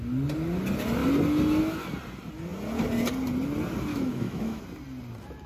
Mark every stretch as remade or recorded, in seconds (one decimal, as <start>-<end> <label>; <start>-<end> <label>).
0.0-3.9 recorded; 3.9-4.6 remade; 4.6-5.5 recorded